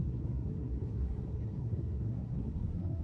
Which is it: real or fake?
fake